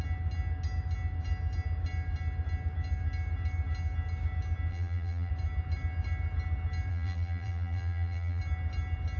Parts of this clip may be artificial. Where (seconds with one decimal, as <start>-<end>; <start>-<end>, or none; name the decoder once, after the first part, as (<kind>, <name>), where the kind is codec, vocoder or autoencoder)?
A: 4.7-5.3 (vocoder, BigVGAN v2); 6.9-8.4